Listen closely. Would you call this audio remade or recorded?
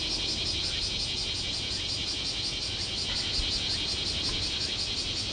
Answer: recorded